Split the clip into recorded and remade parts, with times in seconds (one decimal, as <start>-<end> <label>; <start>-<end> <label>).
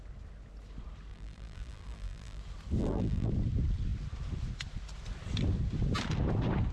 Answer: 0.0-1.1 recorded; 1.1-2.4 remade; 2.4-2.8 recorded; 2.8-3.3 remade; 3.3-6.7 recorded